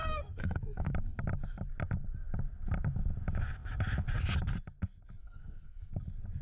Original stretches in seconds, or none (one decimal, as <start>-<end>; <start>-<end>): 0.9-5.2; 5.9-6.4